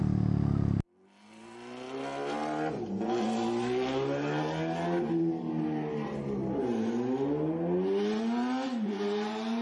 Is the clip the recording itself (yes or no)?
yes